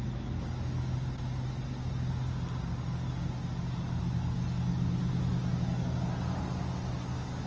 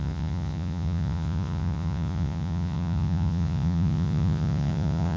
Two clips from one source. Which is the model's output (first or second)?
second